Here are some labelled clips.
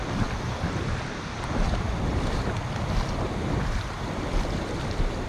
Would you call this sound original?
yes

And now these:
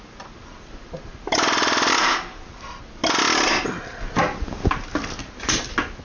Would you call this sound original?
yes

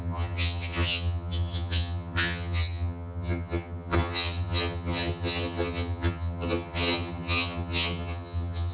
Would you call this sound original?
no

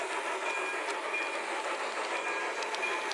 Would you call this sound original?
yes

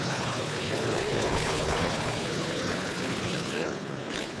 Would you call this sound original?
no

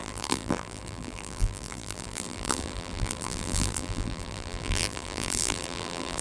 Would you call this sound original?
no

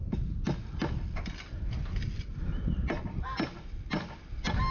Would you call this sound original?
yes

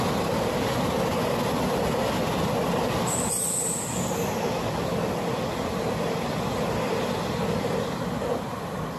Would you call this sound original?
yes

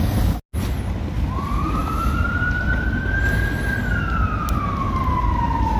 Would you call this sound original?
yes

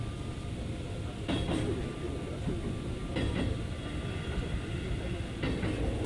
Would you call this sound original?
yes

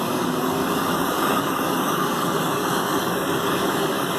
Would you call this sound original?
no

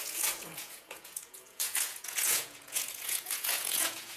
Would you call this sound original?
no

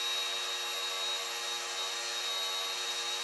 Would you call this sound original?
yes